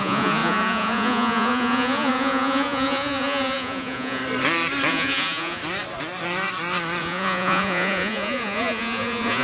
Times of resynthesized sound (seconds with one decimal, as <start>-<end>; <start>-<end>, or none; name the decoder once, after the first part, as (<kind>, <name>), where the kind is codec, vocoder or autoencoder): 0.0-4.2 (vocoder, Vocos); 4.9-5.6; 7.0-9.4